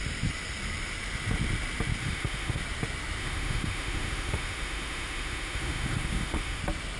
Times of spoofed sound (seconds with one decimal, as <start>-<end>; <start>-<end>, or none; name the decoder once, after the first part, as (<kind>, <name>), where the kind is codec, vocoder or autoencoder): 2.0-2.6 (autoencoder, DAC-VAE); 3.2-6.6